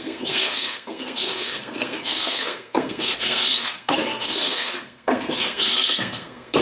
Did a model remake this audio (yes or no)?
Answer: yes